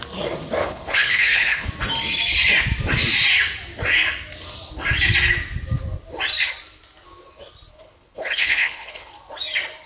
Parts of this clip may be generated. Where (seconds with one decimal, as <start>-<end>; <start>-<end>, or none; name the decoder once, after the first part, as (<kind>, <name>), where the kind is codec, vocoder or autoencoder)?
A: 0.6-1.7 (codec, HILCodec); 7.7-9.1